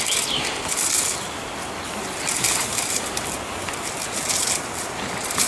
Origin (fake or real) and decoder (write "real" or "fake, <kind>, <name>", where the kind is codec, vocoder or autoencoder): real